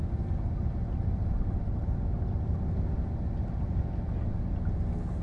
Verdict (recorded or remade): recorded